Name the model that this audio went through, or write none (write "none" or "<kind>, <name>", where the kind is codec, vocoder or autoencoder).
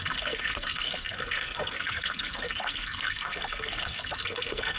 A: codec, SNAC